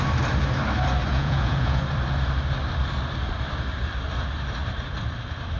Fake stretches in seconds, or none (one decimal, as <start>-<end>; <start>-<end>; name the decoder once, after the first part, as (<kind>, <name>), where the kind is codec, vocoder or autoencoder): 1.1-1.8 (vocoder, Vocos)